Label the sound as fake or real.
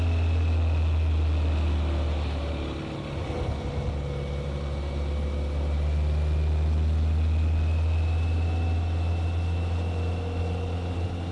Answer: real